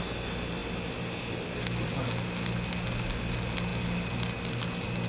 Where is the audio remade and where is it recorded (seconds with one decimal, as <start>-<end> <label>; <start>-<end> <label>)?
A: 0.0-5.1 recorded